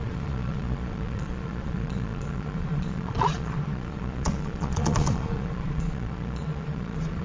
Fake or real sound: fake